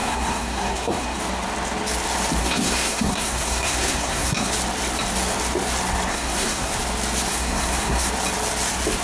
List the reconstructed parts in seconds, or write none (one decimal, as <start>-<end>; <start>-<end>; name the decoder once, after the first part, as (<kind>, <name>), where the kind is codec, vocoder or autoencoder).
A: 0.0-1.2 (codec, SNAC); 2.4-4.5; 6.1-6.7; 7.3-8.1